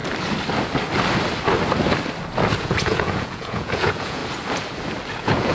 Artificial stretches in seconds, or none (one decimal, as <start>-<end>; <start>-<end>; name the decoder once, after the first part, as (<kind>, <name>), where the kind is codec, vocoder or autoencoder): 2.6-4.2 (vocoder, Vocos); 5.1-5.5